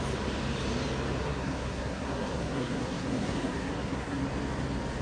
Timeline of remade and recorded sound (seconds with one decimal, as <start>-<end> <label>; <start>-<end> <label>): 0.0-1.2 recorded; 1.2-4.2 remade; 4.2-5.0 recorded